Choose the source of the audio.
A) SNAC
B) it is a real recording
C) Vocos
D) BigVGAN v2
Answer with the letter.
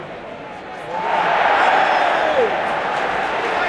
B